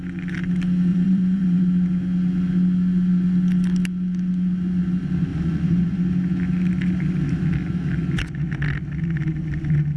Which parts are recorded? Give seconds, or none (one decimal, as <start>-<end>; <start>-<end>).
0.0-0.9; 1.6-5.3; 6.0-10.0